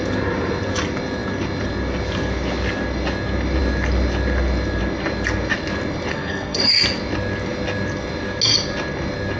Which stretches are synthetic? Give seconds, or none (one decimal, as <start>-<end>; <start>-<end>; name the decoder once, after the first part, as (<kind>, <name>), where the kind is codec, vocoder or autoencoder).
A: 6.1-6.8 (codec, SNAC)